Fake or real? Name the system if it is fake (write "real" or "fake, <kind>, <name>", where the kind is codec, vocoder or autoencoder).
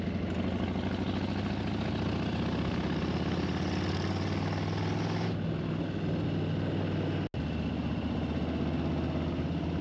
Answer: real